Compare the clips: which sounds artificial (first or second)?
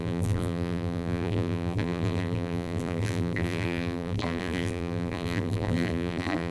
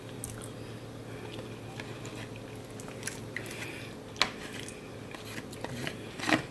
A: first